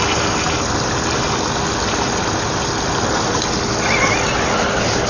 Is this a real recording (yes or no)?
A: yes